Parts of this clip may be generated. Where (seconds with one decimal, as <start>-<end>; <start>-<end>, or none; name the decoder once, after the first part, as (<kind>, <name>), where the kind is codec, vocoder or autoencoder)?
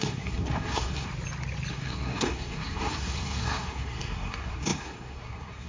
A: 0.0-1.1 (codec, SNAC); 1.7-5.7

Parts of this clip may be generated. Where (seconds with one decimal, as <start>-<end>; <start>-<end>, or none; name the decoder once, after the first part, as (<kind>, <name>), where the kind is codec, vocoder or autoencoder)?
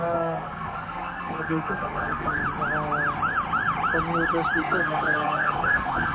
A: 0.0-2.4 (codec, SNAC); 4.6-6.1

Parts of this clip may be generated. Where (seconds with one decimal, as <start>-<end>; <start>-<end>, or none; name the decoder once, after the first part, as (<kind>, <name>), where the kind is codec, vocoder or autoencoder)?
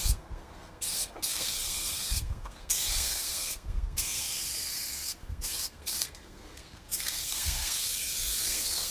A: 0.0-8.9 (codec, SNAC)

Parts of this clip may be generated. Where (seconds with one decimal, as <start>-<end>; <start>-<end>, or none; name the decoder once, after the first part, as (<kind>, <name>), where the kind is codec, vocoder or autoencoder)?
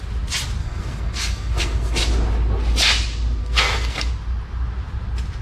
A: 0.6-2.0 (codec, SNAC); 3.4-4.1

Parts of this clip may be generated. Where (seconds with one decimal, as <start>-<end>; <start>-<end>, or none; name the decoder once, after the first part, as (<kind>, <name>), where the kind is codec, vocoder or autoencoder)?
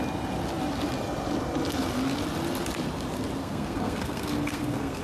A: 3.4-5.0 (codec, SNAC)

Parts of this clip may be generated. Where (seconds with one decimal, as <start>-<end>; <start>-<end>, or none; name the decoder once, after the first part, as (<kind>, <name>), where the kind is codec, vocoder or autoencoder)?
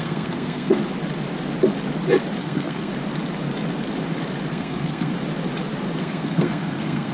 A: 0.0-0.8 (codec, SNAC); 2.4-2.9; 4.5-5.1; 6.0-7.1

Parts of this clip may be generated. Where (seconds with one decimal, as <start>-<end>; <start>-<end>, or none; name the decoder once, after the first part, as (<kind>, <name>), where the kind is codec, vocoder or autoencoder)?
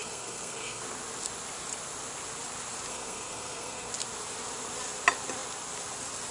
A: 0.0-0.8 (codec, SNAC); 2.9-3.9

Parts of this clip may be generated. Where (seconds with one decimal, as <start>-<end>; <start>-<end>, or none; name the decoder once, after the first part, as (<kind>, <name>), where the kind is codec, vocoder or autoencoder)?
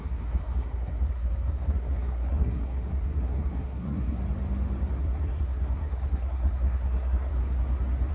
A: 0.0-4.2 (codec, SNAC); 5.0-7.3